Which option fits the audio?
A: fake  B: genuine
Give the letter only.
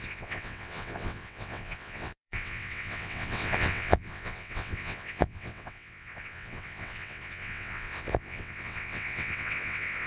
A